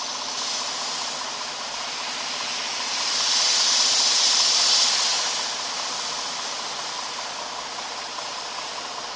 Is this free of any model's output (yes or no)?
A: yes